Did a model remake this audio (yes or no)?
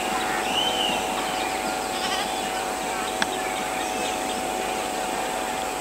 yes